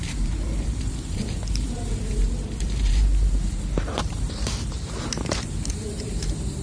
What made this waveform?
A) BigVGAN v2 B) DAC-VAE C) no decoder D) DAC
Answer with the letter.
A